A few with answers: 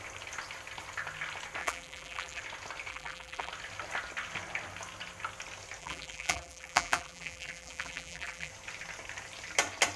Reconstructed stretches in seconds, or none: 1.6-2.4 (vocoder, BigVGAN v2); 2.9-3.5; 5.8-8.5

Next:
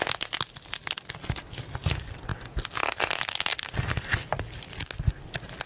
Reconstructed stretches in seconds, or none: none

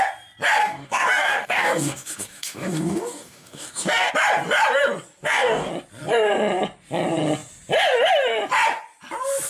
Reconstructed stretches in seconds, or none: 0.6-4.1 (codec, DAC); 5.2-5.7

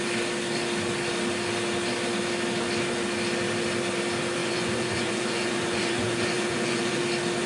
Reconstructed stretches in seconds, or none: 4.4-7.0 (vocoder, Vocos)

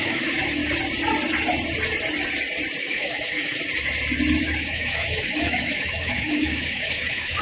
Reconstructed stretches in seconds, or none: 0.0-0.6 (autoencoder, DAC-VAE); 2.8-3.6; 4.4-7.4

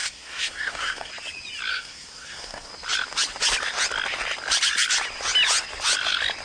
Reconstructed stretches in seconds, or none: 0.0-1.1 (codec, SNAC); 1.7-2.7

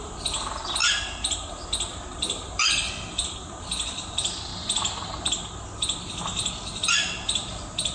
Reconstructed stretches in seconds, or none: 0.0-0.8 (vocoder, BigVGAN v2); 2.2-4.5; 6.5-7.9